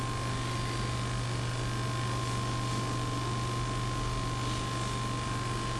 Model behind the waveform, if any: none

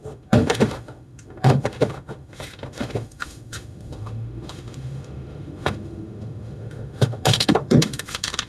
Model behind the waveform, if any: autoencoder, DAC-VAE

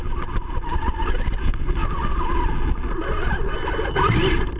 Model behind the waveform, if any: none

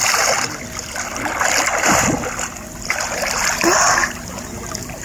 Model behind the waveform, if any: vocoder, BigVGAN v2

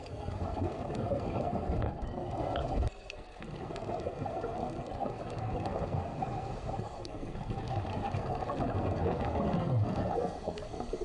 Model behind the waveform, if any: codec, SNAC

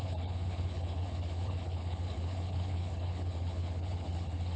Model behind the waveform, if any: codec, HILCodec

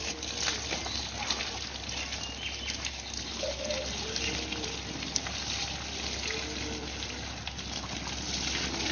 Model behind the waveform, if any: none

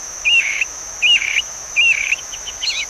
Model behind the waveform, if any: autoencoder, DAC-VAE